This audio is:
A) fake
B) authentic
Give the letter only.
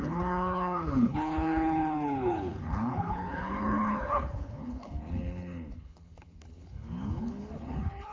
A